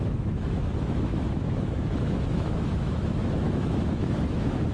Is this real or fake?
fake